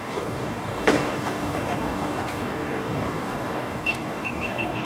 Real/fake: fake